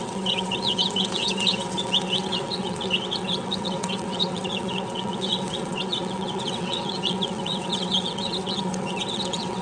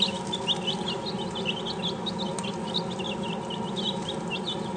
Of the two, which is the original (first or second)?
second